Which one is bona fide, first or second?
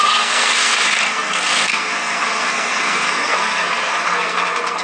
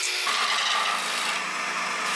second